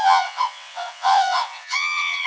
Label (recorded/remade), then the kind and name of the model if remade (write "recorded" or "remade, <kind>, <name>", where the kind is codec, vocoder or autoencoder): remade, vocoder, WaveNeXt